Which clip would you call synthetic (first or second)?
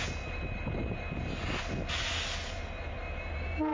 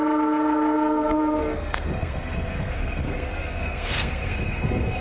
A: second